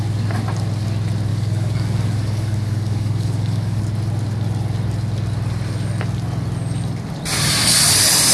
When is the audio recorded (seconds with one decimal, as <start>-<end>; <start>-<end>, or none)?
0.0-1.3; 3.8-8.3

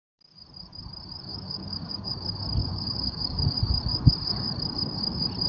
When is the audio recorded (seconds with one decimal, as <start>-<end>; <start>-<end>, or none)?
0.0-1.3; 2.0-2.6; 3.6-5.5